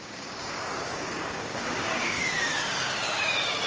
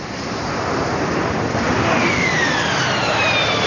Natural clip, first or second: second